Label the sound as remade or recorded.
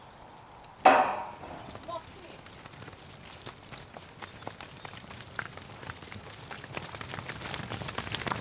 recorded